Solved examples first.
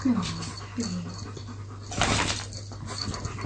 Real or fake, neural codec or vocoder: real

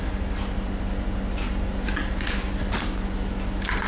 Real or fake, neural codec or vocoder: real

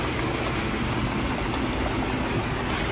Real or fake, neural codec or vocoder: real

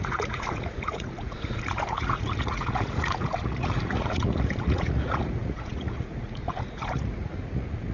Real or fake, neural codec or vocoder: fake, vocoder, Vocos